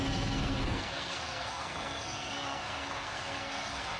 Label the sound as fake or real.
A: fake